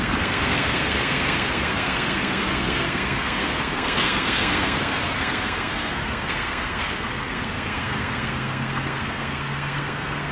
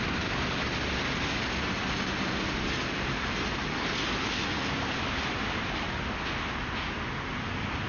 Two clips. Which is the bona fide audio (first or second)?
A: second